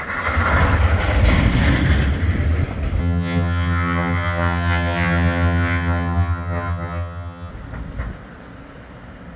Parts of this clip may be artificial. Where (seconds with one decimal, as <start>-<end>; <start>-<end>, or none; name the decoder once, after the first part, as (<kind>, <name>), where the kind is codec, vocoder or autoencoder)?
3.0-7.5 (vocoder, HiFi-GAN)